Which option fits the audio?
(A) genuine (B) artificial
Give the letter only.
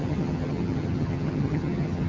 B